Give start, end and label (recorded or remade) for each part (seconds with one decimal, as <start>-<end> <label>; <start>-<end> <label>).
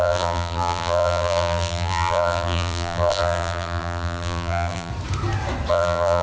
0.0-4.9 remade; 4.9-5.7 recorded; 5.7-6.2 remade